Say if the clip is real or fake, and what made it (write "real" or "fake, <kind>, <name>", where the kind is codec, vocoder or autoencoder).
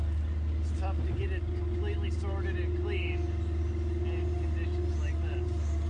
real